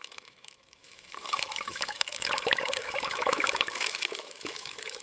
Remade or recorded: remade